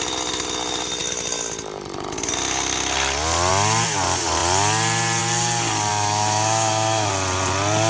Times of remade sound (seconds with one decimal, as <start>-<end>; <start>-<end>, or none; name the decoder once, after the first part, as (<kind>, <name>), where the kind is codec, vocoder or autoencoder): 5.9-7.1 (autoencoder, DAC-VAE)